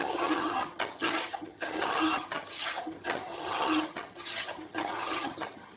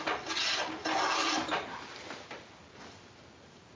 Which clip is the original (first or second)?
second